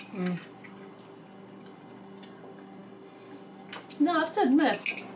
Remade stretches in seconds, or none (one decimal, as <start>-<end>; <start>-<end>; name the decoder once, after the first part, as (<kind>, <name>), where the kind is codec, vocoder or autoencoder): none